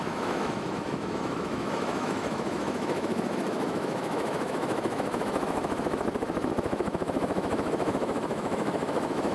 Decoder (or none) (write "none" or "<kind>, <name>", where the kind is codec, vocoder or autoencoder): autoencoder, DAC-VAE